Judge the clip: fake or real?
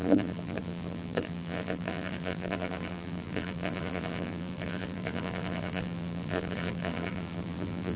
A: fake